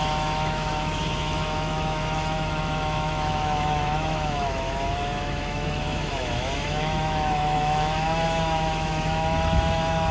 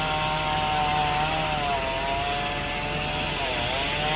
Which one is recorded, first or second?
second